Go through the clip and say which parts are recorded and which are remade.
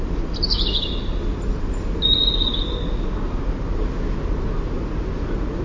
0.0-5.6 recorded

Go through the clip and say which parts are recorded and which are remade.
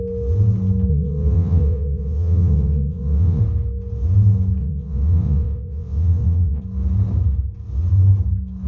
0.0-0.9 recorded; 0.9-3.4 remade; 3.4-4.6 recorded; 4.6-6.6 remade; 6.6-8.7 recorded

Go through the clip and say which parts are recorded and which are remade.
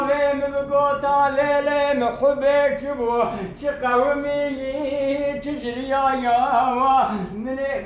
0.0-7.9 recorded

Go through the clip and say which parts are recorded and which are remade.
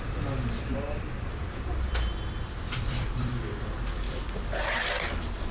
0.0-1.3 recorded; 1.3-4.6 remade; 4.6-5.5 recorded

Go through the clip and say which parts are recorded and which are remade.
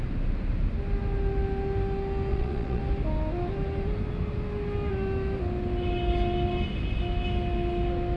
0.0-2.3 recorded; 2.3-2.8 remade; 2.8-8.2 recorded